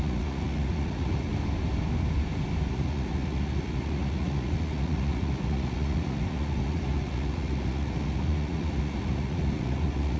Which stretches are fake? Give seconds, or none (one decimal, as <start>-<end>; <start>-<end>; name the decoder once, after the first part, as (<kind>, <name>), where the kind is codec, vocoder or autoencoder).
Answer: 0.0-1.3 (vocoder, Vocos); 2.7-10.2